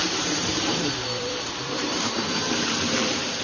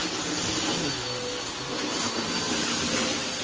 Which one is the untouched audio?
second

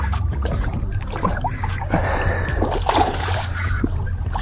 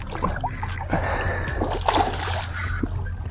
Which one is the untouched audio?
second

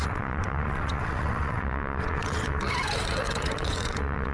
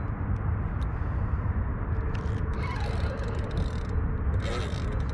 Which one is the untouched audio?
second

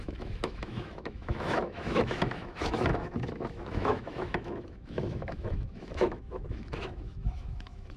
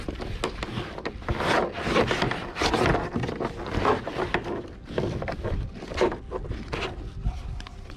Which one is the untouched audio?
second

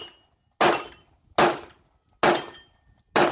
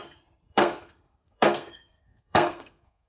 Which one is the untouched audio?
first